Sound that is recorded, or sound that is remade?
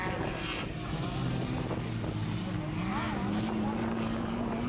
recorded